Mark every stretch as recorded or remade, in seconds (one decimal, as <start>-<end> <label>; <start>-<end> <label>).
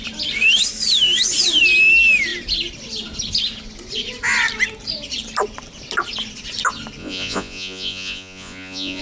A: 0.0-7.0 recorded; 7.0-9.0 remade